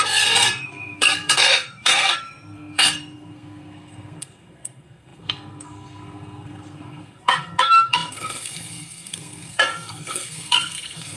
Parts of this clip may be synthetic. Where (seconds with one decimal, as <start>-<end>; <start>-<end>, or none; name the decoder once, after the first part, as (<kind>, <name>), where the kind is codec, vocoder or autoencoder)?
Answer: 0.0-11.2 (codec, SNAC)